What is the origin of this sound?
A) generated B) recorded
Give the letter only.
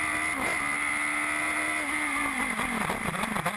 B